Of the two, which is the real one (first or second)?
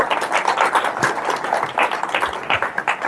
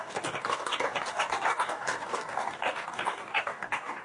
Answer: first